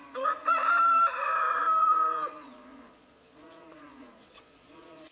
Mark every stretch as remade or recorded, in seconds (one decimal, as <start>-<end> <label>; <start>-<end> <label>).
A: 0.0-0.7 remade; 0.7-1.8 recorded; 1.8-5.1 remade

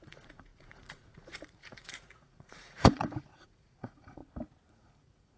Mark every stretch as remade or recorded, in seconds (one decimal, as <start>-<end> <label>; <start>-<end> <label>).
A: 0.0-4.2 remade; 4.2-4.7 recorded; 4.7-5.4 remade

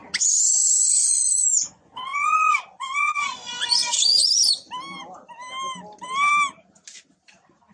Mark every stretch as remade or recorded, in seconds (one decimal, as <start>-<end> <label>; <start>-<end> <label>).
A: 0.0-0.6 recorded; 0.6-4.7 remade; 4.7-7.7 recorded

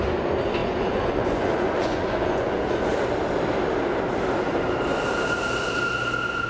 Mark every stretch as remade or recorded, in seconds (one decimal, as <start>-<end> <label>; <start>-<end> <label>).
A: 0.0-0.6 recorded; 0.6-2.8 remade; 2.8-6.5 recorded

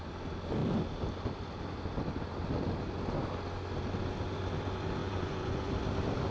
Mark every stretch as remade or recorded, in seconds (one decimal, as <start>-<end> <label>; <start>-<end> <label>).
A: 0.0-5.0 recorded; 5.0-5.7 remade; 5.7-6.3 recorded

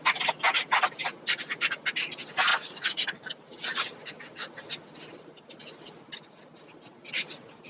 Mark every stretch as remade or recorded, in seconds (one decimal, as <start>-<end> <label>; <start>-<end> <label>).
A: 0.0-2.5 recorded; 2.5-3.2 remade; 3.2-7.7 recorded